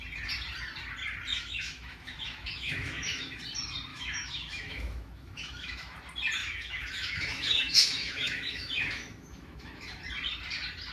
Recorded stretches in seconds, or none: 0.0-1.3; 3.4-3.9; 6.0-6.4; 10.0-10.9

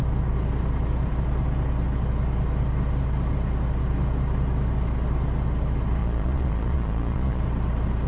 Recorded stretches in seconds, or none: 0.0-6.0; 7.4-8.1

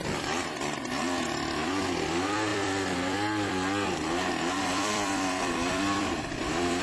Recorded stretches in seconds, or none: none